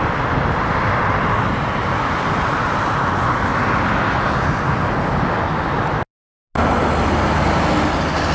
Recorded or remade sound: recorded